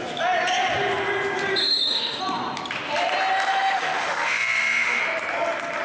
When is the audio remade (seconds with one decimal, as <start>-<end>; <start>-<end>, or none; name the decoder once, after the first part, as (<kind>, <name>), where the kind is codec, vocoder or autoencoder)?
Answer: 1.6-2.2 (autoencoder, DAC-VAE); 3.5-5.0